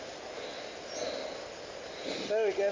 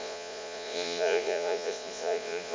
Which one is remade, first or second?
second